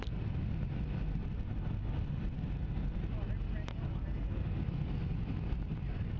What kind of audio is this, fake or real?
real